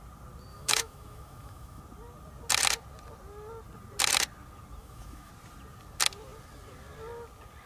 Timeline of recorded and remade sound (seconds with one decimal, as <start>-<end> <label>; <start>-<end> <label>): 0.0-0.5 recorded; 0.5-1.8 remade; 1.8-4.8 recorded; 4.8-5.3 remade; 5.3-7.7 recorded